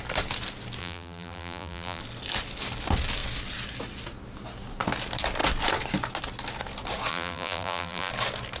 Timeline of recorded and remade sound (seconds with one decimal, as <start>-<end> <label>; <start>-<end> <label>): 0.0-0.8 recorded; 0.8-2.0 remade; 2.0-7.1 recorded; 7.1-8.1 remade; 8.1-8.6 recorded